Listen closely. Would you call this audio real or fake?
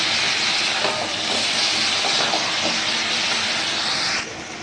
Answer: real